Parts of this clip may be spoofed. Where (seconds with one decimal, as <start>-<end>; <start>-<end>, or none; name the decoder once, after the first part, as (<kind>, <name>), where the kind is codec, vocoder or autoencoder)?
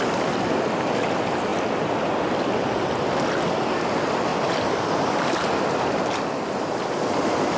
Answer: 4.3-6.7 (vocoder, BigVGAN v2)